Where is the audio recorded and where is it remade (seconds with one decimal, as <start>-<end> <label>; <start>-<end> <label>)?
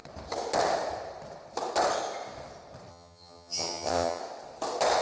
0.0-2.9 recorded; 2.9-4.2 remade; 4.2-5.0 recorded